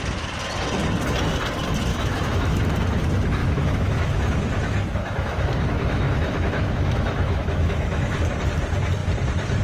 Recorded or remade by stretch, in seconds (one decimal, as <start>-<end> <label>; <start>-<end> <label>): 0.0-1.9 recorded; 1.9-2.6 remade; 2.6-3.4 recorded; 3.4-8.2 remade; 8.2-9.6 recorded